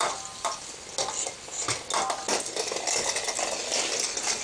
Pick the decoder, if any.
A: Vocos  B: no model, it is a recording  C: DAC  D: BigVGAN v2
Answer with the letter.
B